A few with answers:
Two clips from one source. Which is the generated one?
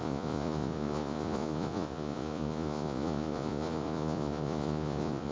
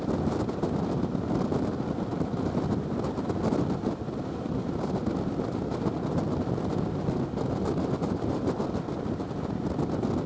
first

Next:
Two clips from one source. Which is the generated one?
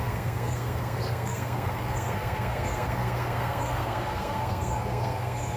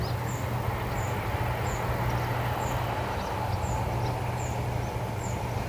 first